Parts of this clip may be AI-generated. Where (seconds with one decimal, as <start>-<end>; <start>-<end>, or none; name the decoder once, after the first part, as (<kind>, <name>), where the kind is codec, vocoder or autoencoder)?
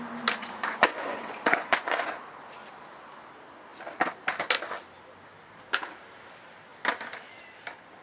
0.4-2.2 (vocoder, Vocos)